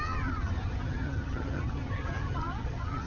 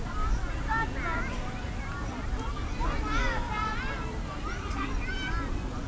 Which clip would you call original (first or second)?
second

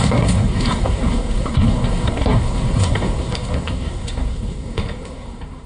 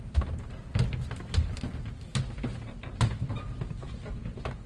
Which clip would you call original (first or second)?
second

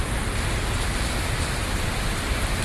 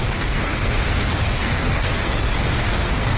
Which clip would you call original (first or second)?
first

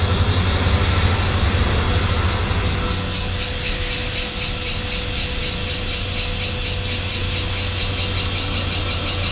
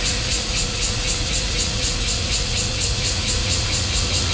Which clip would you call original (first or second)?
first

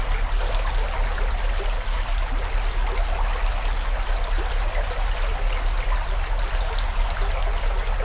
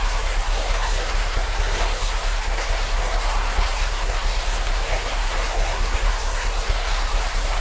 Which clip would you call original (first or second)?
first